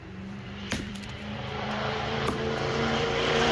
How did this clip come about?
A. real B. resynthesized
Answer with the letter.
B